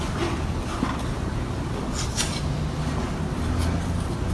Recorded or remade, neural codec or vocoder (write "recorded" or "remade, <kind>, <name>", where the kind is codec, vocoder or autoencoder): recorded